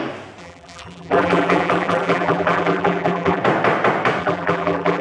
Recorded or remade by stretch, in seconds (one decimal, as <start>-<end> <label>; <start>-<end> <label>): 0.0-0.4 recorded; 0.4-3.4 remade; 3.4-4.2 recorded; 4.2-5.0 remade